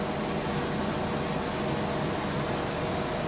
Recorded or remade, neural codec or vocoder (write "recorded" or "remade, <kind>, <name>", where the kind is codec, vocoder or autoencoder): recorded